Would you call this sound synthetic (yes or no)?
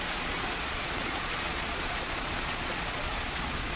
yes